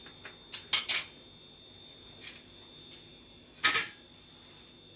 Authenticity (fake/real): real